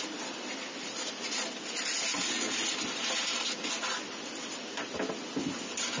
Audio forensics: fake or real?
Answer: real